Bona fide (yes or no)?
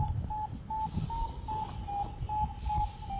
yes